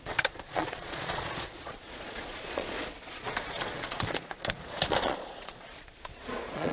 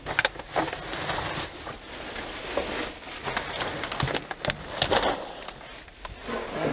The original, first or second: second